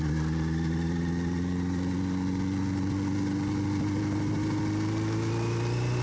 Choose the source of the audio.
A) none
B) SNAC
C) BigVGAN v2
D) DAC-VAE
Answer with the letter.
A